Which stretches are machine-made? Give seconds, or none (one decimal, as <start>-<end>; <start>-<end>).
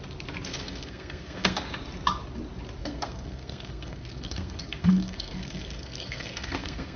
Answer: 0.5-1.6; 2.8-7.0